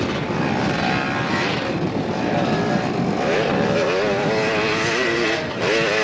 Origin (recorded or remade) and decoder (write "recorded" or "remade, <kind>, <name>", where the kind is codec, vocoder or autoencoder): recorded